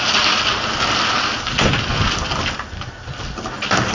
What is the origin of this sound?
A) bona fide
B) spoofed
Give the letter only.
A